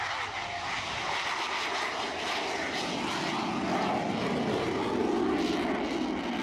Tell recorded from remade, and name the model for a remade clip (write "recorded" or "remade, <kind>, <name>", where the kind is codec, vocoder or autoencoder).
recorded